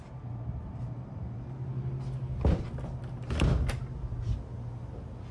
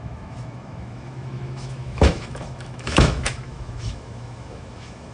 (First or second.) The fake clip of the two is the second